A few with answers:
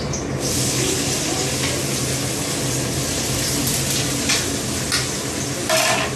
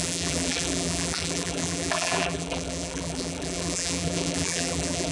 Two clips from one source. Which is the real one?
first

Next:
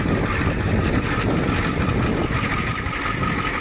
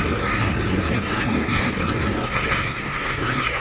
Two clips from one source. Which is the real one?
first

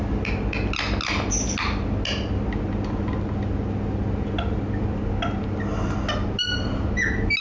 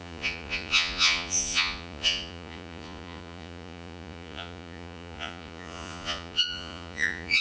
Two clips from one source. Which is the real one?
first